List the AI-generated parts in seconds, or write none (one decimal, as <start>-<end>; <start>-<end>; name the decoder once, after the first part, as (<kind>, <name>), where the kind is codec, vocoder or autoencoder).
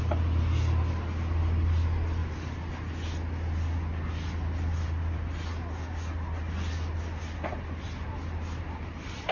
none